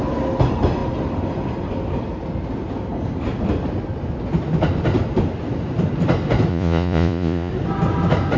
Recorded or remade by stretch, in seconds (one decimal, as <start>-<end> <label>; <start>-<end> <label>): 0.0-6.5 recorded; 6.5-7.5 remade; 7.5-8.4 recorded